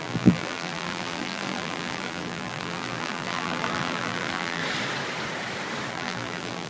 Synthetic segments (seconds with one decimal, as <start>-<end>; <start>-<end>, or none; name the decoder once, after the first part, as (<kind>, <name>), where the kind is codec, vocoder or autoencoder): 0.0-4.6 (vocoder, BigVGAN v2); 5.9-6.7